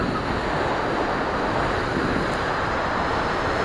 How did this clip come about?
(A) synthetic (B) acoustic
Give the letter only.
B